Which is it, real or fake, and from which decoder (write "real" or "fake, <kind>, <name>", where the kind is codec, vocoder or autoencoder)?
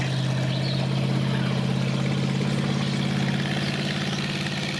real